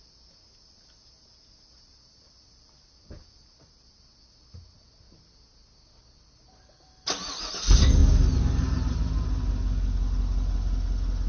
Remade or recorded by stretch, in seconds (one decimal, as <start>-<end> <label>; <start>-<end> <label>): 0.0-11.3 recorded